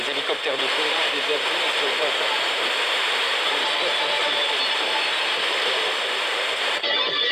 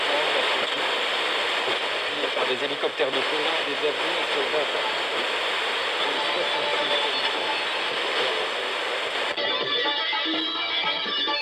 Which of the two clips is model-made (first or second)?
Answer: first